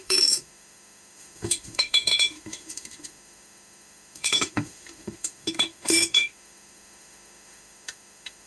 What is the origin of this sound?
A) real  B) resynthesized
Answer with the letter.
B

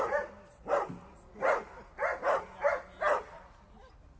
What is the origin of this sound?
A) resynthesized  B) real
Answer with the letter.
B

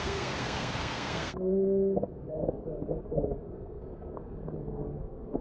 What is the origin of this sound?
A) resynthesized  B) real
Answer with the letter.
A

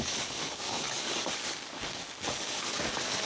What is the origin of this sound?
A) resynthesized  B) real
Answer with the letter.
A